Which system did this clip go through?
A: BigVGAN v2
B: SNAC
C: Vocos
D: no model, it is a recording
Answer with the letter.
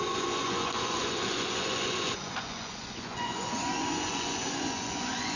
C